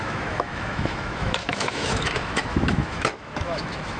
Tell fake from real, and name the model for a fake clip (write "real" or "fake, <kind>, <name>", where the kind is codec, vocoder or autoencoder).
fake, autoencoder, DAC-VAE